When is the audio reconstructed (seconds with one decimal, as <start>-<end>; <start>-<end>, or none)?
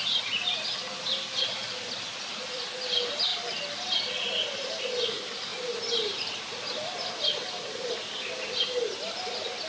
none